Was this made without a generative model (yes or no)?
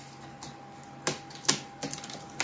yes